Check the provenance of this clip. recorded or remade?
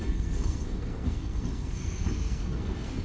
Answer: remade